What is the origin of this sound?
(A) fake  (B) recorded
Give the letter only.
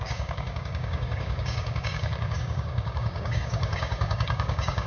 A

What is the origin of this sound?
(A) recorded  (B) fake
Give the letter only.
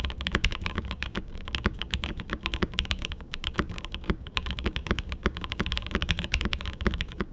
B